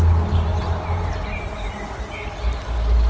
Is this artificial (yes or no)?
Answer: no